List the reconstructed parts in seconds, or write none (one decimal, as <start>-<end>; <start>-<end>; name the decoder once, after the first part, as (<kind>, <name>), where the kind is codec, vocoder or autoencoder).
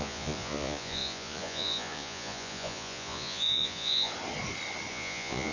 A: 0.0-4.1 (vocoder, Vocos); 4.9-5.5